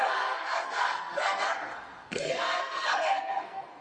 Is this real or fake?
fake